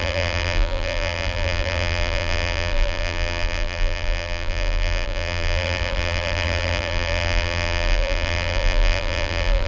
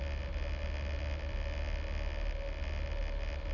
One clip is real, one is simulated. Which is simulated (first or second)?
first